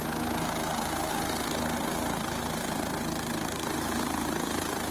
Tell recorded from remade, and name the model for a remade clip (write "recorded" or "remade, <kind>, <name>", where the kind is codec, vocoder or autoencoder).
recorded